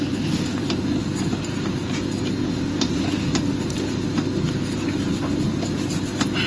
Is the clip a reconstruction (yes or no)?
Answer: no